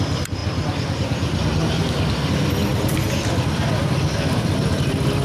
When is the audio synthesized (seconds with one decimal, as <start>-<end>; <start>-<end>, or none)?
0.0-0.4; 2.3-5.2